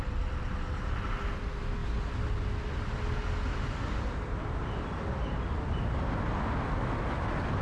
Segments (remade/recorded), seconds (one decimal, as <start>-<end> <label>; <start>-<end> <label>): 0.0-7.6 recorded